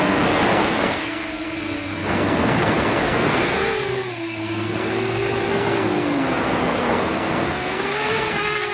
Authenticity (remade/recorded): remade